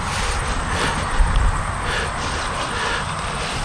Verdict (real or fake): real